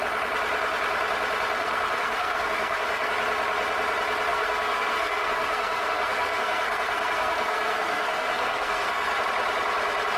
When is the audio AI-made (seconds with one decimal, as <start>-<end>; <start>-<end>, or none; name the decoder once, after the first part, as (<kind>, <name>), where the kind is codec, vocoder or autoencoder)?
1.6-3.1 (codec, SNAC); 4.3-9.2